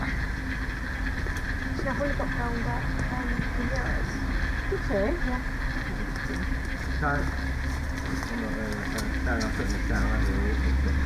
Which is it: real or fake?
real